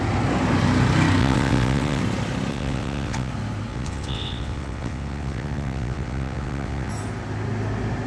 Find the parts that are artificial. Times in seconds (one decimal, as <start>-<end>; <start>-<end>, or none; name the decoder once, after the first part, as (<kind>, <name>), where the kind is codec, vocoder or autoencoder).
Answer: 1.2-2.0 (vocoder, WaveNeXt); 2.5-3.3; 3.7-6.9